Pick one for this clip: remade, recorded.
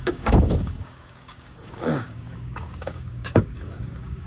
remade